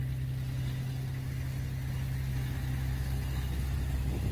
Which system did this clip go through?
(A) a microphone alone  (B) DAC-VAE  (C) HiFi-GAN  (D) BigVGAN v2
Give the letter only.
A